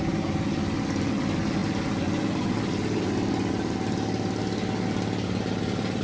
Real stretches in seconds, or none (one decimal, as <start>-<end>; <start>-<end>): 0.0-6.0